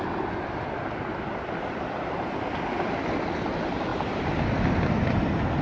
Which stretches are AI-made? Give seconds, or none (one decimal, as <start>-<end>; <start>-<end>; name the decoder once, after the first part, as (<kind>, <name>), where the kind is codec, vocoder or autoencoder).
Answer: none